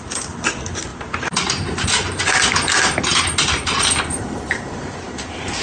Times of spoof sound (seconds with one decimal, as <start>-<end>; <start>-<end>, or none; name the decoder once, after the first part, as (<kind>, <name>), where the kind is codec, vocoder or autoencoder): 0.9-2.2 (vocoder, BigVGAN v2); 3.1-4.7